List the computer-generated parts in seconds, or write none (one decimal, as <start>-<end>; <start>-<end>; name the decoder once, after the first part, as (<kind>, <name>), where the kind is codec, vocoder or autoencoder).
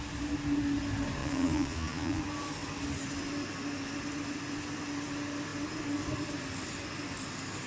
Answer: 1.2-2.2 (vocoder, Vocos)